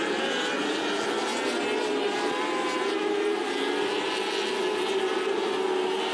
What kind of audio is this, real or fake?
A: real